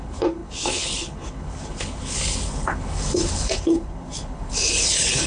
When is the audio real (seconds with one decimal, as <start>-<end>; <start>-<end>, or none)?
none